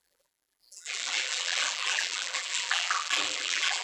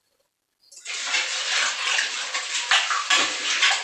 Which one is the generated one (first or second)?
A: first